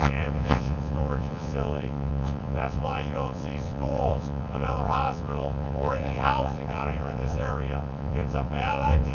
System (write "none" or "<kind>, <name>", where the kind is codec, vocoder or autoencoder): vocoder, WaveNeXt